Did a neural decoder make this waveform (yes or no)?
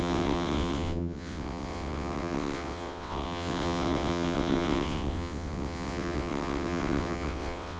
yes